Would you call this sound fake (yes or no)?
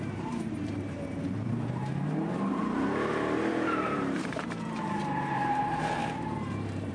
yes